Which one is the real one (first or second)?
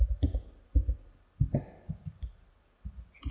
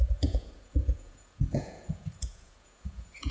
first